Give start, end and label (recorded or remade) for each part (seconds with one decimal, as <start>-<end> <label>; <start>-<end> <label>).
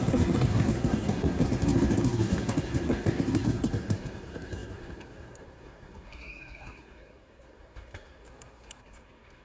0.0-9.4 remade